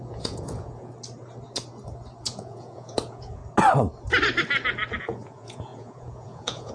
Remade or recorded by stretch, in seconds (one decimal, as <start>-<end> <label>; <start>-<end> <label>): 0.0-0.9 remade; 0.9-2.2 recorded; 2.2-3.4 remade; 3.4-5.0 recorded; 5.0-6.7 remade